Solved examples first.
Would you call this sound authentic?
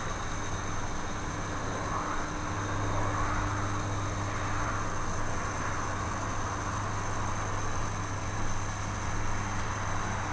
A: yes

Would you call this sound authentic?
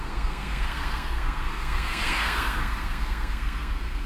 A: no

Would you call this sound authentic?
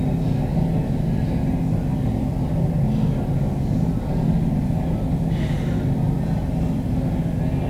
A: yes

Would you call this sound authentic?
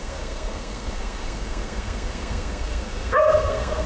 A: no